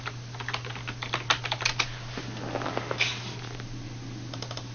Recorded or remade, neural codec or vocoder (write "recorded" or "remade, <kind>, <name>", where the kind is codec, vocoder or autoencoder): recorded